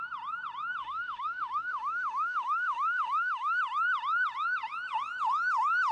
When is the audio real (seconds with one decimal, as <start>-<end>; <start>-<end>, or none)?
0.0-0.8; 3.6-5.9